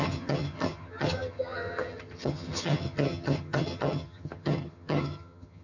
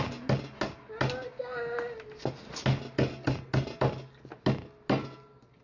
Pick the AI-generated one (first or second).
first